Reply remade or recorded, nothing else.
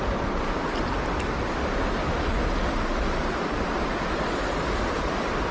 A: recorded